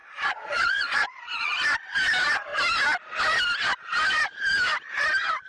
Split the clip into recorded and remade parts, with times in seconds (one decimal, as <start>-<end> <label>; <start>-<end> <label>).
0.0-1.5 remade; 1.5-5.5 recorded